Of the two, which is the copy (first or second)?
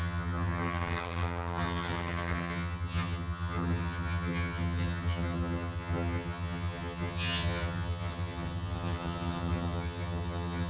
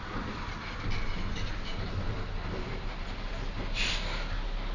first